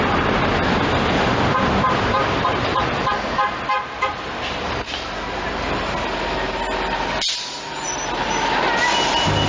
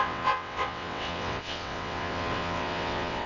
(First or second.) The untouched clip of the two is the first